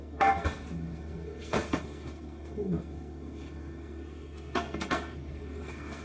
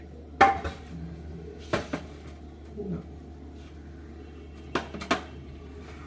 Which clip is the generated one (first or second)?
first